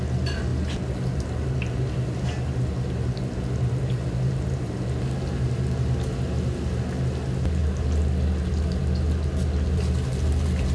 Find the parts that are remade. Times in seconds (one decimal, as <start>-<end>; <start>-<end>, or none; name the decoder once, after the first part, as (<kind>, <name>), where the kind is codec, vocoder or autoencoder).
none